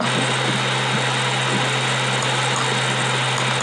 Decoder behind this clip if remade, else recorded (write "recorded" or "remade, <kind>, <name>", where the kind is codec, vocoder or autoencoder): recorded